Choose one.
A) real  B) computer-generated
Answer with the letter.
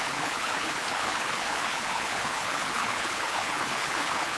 B